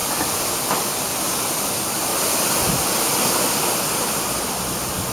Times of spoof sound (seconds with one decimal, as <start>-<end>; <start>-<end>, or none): none